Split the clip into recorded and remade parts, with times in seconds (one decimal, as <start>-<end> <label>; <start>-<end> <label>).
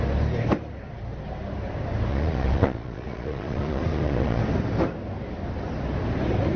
0.0-2.1 recorded; 2.1-4.4 remade; 4.4-6.6 recorded